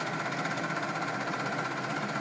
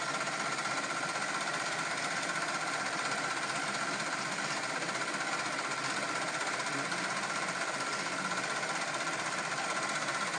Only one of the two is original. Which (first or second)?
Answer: first